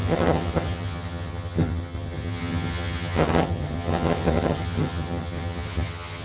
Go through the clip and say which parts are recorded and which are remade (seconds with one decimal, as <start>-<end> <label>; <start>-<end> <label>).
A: 0.0-6.2 remade